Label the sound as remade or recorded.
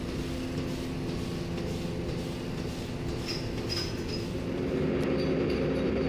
recorded